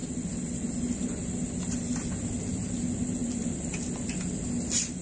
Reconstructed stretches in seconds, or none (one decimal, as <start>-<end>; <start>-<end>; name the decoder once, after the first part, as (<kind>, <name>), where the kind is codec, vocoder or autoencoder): none